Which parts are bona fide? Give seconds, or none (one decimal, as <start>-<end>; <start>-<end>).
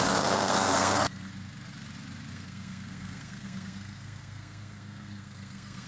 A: 1.3-2.3